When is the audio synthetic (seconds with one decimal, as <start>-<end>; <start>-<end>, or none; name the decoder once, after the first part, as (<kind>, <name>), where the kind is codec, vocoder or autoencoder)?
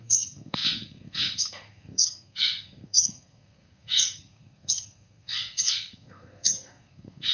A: 0.0-7.3 (codec, SNAC)